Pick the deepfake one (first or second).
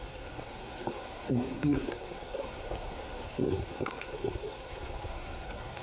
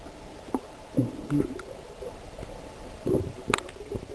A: first